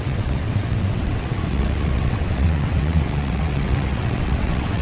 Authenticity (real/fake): fake